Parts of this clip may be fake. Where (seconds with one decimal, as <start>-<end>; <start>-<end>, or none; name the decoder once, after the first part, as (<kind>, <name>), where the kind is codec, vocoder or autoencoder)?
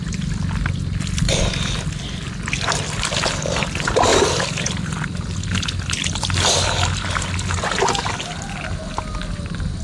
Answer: none